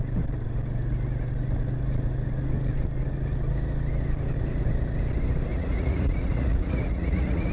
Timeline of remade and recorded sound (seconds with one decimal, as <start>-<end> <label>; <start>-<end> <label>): 0.0-5.5 recorded; 5.5-7.5 remade